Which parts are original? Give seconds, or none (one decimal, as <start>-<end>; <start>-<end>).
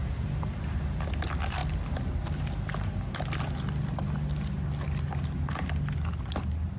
0.0-6.8